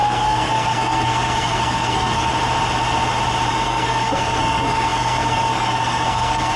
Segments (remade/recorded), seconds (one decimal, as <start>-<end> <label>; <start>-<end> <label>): 0.0-2.3 remade; 2.3-3.5 recorded; 3.5-6.6 remade